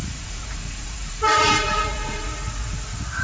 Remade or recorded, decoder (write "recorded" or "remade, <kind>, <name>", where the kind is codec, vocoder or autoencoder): remade, vocoder, Vocos